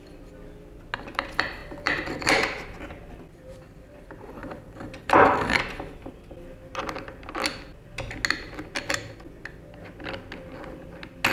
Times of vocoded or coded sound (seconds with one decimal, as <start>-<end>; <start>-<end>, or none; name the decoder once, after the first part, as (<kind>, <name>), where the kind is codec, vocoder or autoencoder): 1.6-2.2 (vocoder, BigVGAN v2); 4.4-6.1